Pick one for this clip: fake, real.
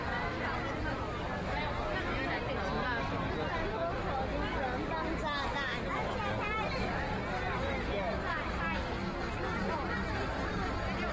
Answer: real